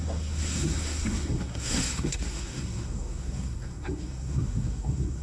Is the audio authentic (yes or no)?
no